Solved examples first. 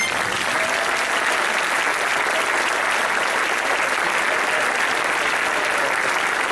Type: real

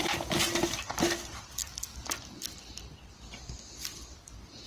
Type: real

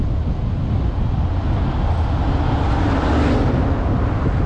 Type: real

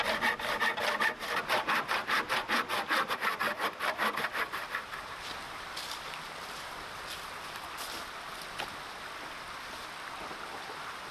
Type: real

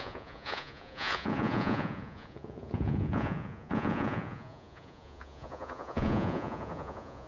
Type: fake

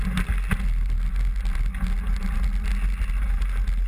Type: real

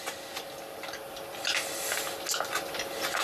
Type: real